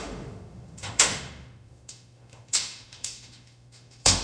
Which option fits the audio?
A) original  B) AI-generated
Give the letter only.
B